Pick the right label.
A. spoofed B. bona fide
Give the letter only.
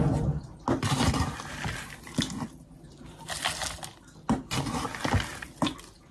B